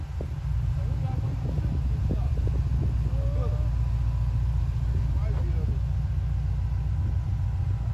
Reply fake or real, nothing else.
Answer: real